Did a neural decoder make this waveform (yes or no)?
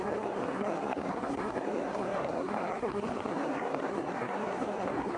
yes